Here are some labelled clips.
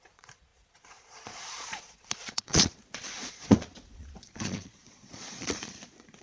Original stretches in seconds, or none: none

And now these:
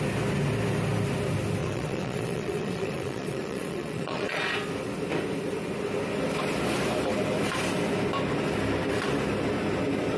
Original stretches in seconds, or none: 0.0-1.6; 4.4-10.2

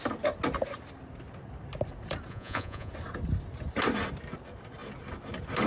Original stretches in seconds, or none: 0.0-2.3; 2.9-5.7

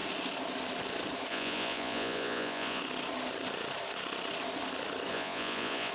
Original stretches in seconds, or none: 0.0-1.3; 2.8-5.1

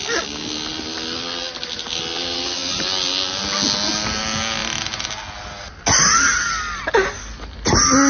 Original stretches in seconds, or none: 0.0-8.1

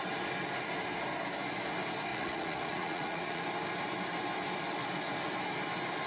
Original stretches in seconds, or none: 0.0-2.1; 3.4-6.1